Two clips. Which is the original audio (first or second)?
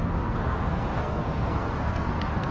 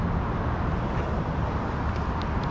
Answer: second